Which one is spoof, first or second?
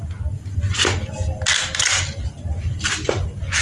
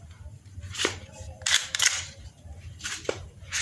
second